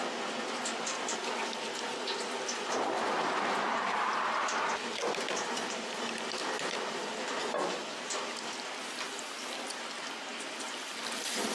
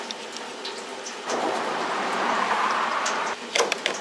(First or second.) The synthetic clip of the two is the second